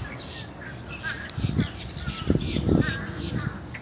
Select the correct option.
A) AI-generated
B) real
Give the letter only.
B